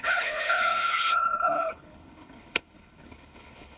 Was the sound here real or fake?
fake